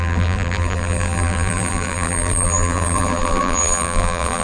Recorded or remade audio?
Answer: remade